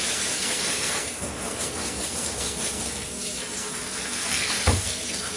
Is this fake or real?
fake